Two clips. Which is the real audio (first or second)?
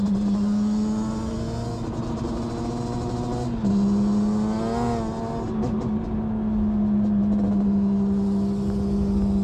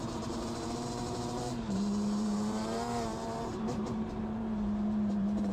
first